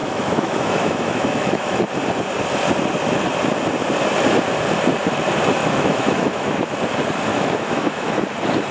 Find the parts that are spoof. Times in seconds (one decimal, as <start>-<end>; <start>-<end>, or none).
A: 0.0-1.8; 5.6-6.7; 7.3-8.2